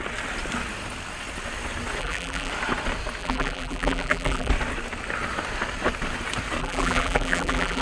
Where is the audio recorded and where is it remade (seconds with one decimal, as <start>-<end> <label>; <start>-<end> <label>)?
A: 0.0-2.0 recorded; 2.0-2.5 remade; 2.5-3.2 recorded; 3.2-4.5 remade; 4.5-6.6 recorded; 6.6-7.8 remade